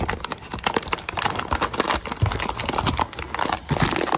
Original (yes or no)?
yes